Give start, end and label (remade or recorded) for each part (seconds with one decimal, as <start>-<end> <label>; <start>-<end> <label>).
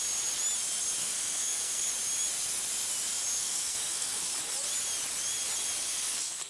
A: 0.0-1.0 recorded; 1.0-1.9 remade; 1.9-3.4 recorded; 3.4-4.3 remade; 4.3-5.9 recorded; 5.9-6.5 remade